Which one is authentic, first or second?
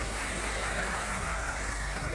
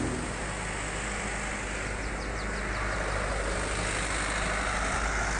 second